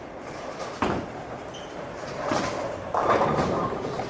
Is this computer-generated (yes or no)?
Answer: no